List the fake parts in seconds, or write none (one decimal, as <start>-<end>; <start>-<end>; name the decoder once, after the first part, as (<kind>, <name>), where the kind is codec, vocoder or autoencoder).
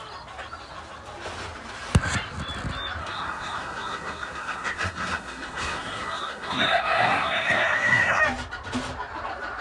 3.0-8.2 (codec, SNAC)